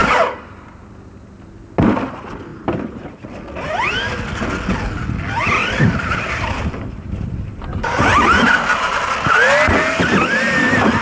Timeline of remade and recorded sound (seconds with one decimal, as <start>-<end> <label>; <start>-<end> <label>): 0.0-0.9 remade; 0.9-2.5 recorded; 2.5-3.4 remade; 3.4-5.6 recorded; 5.6-9.0 remade; 9.0-11.0 recorded